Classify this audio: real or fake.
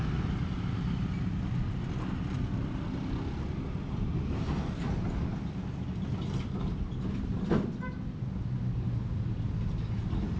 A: real